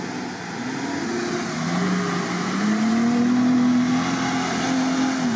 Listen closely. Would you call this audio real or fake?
real